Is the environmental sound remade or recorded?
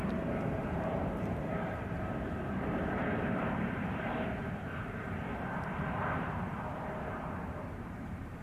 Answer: remade